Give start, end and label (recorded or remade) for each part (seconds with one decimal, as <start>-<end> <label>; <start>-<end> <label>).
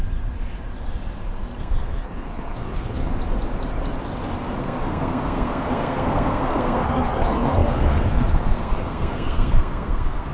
0.0-1.6 recorded; 1.6-3.1 remade; 3.1-4.6 recorded; 4.6-10.3 remade